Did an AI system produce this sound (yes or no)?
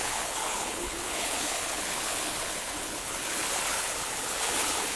yes